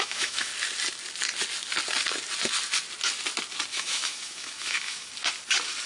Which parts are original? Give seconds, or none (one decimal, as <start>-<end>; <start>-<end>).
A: 0.5-3.7; 5.1-5.9